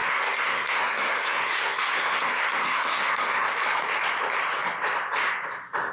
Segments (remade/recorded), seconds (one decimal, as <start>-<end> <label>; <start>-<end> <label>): 0.0-3.5 remade; 3.5-5.9 recorded